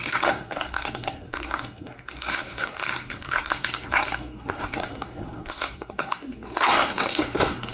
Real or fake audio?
fake